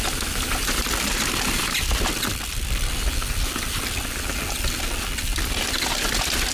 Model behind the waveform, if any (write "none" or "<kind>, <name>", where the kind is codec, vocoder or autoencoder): vocoder, BigVGAN v2